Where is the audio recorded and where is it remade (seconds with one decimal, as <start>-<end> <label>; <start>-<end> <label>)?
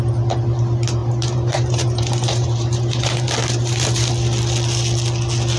0.0-1.0 recorded; 1.0-4.1 remade; 4.1-5.6 recorded